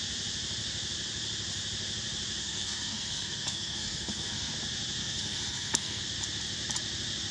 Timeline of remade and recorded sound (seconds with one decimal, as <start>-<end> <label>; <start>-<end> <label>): 0.0-2.4 recorded; 2.4-4.5 remade; 4.5-5.0 recorded; 5.0-6.0 remade; 6.0-7.3 recorded